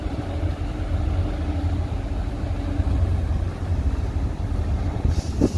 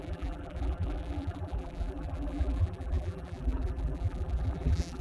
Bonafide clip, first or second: first